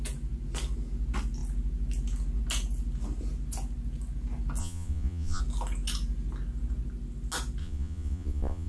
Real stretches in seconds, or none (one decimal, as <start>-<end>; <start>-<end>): 0.0-4.6; 5.4-7.6